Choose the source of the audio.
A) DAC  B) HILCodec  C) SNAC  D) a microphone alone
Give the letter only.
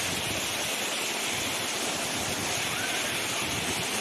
D